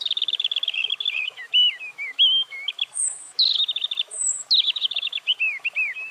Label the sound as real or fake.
fake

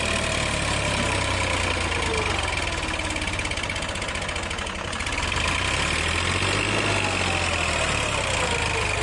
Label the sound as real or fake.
real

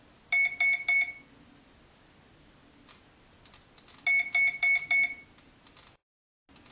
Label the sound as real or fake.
real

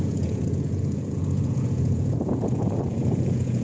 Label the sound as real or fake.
fake